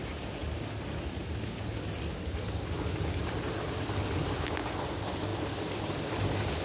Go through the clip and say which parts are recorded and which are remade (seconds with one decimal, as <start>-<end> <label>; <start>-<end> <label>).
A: 0.0-6.6 recorded